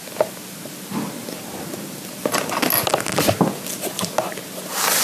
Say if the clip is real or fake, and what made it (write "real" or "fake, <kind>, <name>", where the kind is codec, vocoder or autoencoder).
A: real